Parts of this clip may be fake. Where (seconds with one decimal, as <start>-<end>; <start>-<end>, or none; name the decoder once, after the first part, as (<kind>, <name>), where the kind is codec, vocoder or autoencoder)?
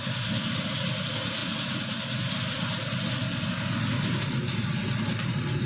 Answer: none